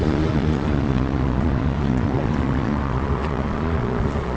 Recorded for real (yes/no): no